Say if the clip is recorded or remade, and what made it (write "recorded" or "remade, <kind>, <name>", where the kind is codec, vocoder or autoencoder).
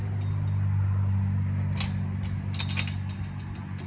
recorded